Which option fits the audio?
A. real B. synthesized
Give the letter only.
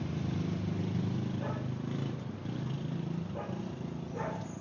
A